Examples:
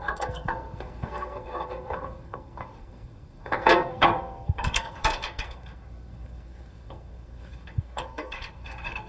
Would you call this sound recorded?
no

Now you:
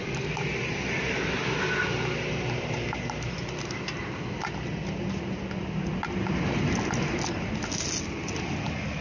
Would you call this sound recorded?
yes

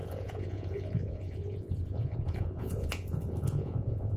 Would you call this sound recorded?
no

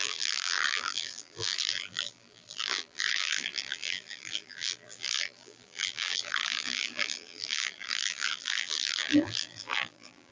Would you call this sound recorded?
no